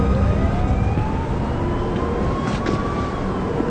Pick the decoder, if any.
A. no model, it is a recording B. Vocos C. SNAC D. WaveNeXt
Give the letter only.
A